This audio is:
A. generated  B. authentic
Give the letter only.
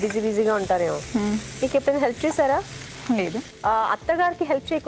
B